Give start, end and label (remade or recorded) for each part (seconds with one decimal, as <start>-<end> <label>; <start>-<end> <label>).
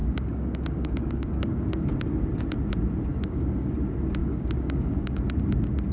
0.0-1.9 remade; 1.9-3.1 recorded; 3.1-3.7 remade; 3.7-4.2 recorded; 4.2-5.2 remade; 5.2-5.9 recorded